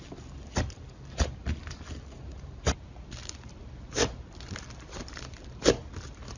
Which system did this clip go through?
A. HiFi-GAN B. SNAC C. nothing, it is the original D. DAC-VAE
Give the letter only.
C